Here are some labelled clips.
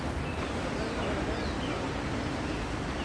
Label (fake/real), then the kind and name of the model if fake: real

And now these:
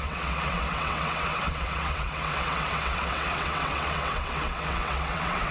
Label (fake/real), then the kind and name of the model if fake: fake, vocoder, WaveNeXt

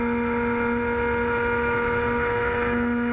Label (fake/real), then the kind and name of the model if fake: real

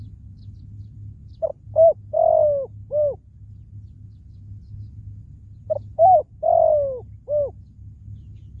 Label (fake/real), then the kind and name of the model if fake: real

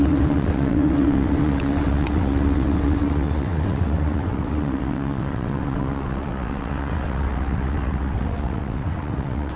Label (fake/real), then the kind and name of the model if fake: fake, vocoder, WaveNeXt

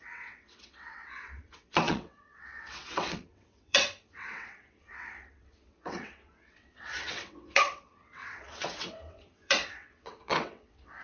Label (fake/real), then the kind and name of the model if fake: fake, vocoder, WaveNeXt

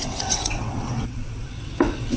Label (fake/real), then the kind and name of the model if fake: fake, vocoder, WaveNeXt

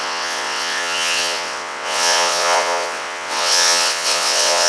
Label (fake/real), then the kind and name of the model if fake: fake, vocoder, WaveNeXt